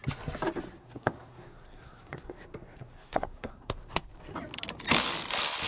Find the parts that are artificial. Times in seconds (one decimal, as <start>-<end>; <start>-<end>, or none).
0.8-4.3